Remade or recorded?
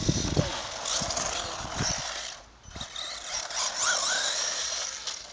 recorded